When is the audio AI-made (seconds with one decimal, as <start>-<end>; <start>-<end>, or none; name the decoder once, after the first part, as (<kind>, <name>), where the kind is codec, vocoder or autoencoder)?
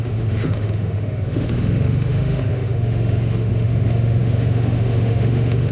0.0-5.7 (autoencoder, DAC-VAE)